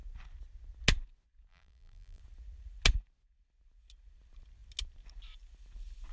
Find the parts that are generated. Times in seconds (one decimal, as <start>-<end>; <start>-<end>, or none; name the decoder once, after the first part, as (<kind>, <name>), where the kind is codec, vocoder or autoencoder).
1.5-2.2 (vocoder, BigVGAN v2)

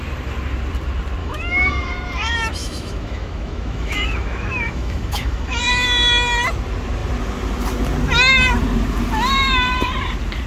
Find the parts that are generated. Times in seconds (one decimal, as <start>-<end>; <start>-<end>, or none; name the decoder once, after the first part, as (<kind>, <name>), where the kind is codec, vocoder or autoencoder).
1.2-1.9 (autoencoder, DAC-VAE); 2.6-5.7

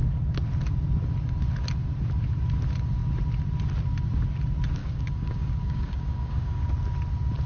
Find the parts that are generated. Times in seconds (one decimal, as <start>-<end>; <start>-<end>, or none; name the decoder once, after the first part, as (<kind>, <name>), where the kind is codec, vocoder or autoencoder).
4.8-6.7 (codec, DAC)

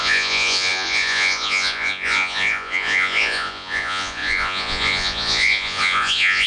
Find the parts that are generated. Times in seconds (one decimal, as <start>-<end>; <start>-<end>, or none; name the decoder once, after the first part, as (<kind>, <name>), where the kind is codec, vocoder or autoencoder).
0.0-6.5 (vocoder, Vocos)

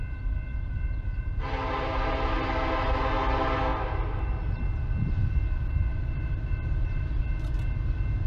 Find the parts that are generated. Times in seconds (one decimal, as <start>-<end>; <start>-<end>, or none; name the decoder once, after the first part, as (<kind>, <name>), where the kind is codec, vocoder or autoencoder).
3.7-4.3 (vocoder, BigVGAN v2); 5.9-7.2